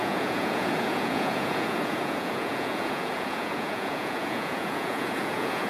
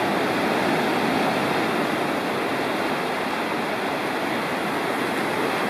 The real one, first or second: second